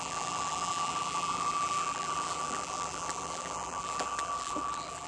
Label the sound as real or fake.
fake